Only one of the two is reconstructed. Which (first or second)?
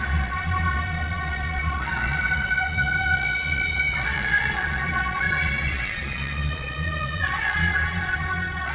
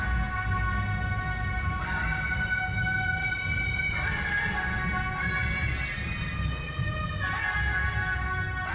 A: first